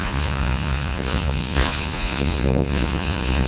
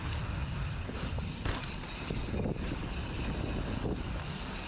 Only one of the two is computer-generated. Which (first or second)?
first